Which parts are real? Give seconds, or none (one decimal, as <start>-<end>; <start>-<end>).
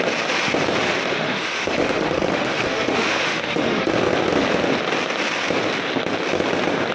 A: 0.0-1.1; 4.0-6.9